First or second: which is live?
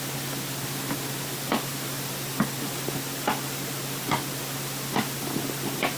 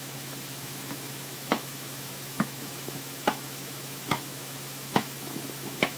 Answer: first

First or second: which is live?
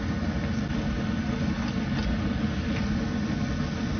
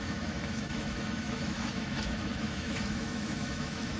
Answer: first